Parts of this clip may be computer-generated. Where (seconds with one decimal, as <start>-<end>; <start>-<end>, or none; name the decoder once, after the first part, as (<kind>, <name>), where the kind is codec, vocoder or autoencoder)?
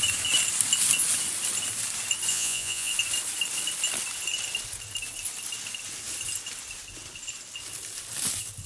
2.3-2.9 (vocoder, Vocos)